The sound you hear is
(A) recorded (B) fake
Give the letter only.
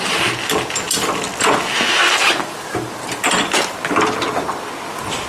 A